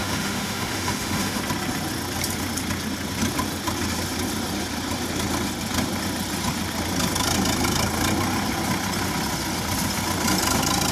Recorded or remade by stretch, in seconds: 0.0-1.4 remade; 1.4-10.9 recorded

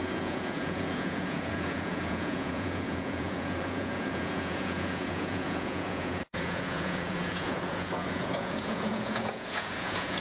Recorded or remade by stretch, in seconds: 0.0-10.2 remade

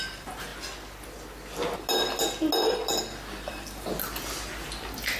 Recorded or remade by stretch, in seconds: 0.0-0.5 remade; 0.5-3.5 recorded; 3.5-3.9 remade; 3.9-5.2 recorded

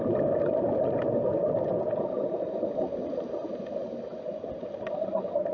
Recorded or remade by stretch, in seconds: 0.0-5.5 recorded